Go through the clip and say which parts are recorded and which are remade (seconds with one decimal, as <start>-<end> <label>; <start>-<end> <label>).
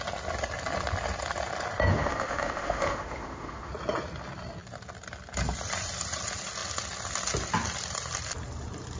0.0-1.9 recorded; 1.9-3.7 remade; 3.7-9.0 recorded